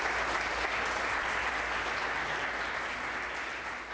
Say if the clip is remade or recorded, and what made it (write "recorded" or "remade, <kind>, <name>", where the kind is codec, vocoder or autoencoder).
recorded